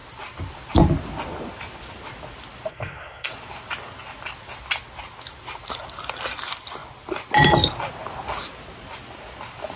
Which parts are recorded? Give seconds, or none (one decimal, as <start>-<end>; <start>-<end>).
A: 0.0-2.7; 3.3-9.8